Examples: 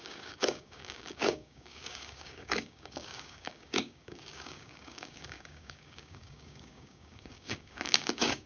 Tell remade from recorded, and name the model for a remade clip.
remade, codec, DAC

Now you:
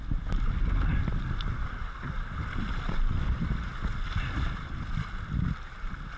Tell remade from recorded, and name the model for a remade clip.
recorded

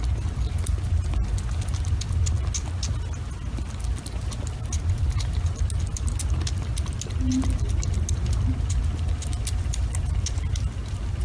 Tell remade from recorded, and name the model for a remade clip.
recorded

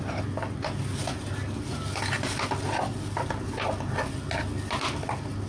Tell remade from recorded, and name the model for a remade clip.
recorded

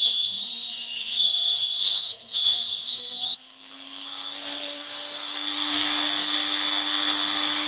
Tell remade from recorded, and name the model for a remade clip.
remade, codec, SNAC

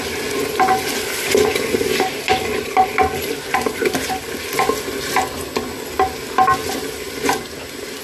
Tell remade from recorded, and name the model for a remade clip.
recorded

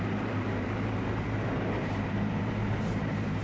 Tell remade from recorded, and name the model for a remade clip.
remade, vocoder, BigVGAN v2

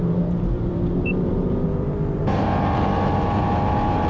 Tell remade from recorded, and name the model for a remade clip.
remade, vocoder, BigVGAN v2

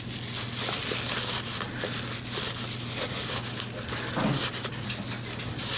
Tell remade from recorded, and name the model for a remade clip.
recorded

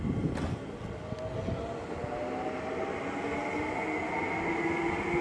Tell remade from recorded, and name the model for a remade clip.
recorded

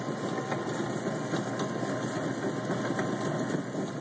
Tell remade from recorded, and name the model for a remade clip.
recorded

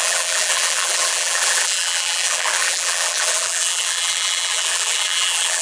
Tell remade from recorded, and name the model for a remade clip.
remade, vocoder, BigVGAN v2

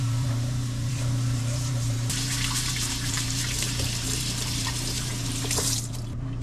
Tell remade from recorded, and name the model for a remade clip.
remade, vocoder, BigVGAN v2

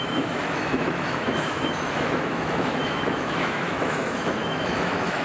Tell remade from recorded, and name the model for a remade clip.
remade, autoencoder, DAC-VAE